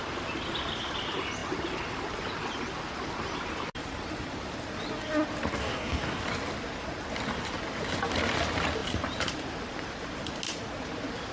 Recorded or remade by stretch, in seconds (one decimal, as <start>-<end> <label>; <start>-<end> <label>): 0.0-5.6 recorded; 5.6-6.2 remade; 6.2-11.3 recorded